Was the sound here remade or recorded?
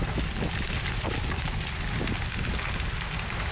recorded